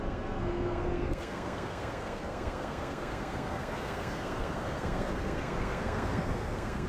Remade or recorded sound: remade